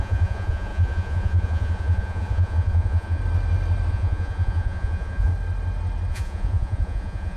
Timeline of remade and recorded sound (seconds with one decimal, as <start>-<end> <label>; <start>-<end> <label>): 0.0-3.2 remade; 3.2-3.9 recorded; 3.9-5.3 remade; 5.3-6.1 recorded; 6.1-7.4 remade